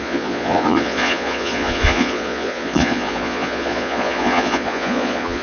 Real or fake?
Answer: fake